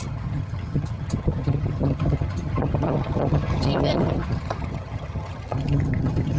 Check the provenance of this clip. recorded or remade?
remade